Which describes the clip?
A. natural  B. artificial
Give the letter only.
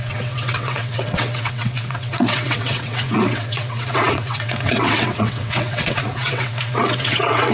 B